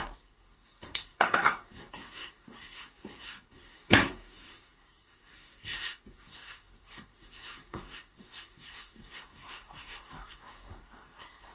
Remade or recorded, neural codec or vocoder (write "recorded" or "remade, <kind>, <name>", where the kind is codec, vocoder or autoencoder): remade, codec, SNAC